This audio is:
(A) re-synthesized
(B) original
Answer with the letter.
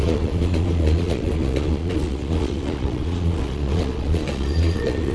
A